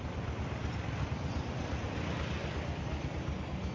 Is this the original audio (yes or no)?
yes